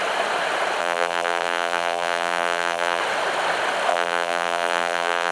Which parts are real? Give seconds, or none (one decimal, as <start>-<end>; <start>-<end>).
0.0-0.8; 3.0-3.9